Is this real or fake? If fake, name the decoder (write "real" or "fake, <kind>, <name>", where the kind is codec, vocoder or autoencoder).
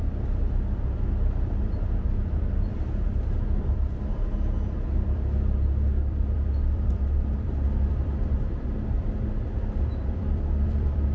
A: fake, vocoder, BigVGAN v2